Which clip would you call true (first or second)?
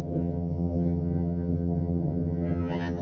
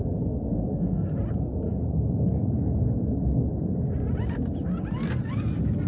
second